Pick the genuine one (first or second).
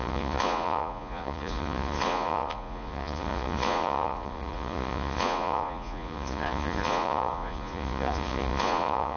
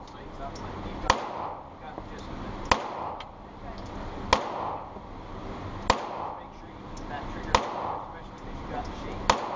second